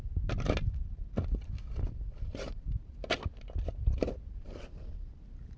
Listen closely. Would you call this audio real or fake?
real